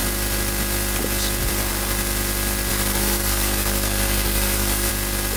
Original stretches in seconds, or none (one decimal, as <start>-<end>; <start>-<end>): 0.0-2.7; 4.9-5.4